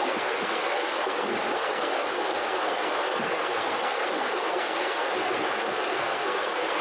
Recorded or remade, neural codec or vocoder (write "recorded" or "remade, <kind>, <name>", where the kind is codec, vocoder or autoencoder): remade, codec, SNAC